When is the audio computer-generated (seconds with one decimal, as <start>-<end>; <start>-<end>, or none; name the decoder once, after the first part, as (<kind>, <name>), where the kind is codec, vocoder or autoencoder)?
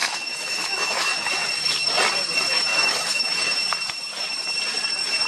0.0-1.3 (autoencoder, DAC-VAE); 2.7-3.6